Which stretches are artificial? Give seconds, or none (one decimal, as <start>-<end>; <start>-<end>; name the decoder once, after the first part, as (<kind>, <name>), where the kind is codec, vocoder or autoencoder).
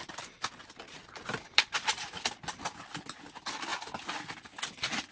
none